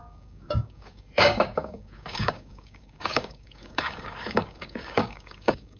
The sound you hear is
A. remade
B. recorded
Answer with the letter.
A